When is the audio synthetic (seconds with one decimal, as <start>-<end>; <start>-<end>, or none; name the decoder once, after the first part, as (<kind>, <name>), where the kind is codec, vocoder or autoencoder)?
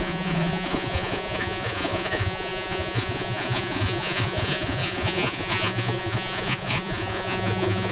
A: 0.0-7.9 (vocoder, Vocos)